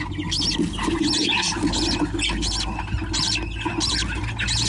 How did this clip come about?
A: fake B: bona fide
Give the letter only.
B